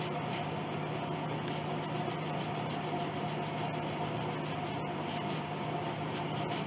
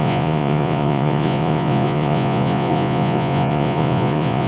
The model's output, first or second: second